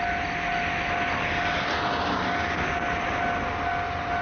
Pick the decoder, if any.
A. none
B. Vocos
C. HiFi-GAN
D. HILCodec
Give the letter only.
A